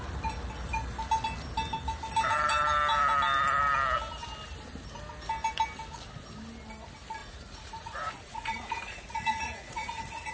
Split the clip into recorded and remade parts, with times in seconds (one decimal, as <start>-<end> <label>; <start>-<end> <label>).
0.0-7.2 recorded; 7.2-10.3 remade